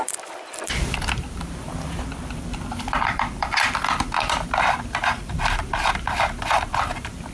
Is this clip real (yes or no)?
no